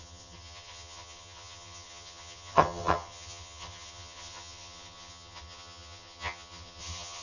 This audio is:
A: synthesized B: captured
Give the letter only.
A